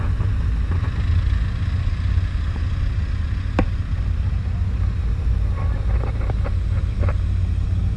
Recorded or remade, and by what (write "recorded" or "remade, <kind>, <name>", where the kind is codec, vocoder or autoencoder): recorded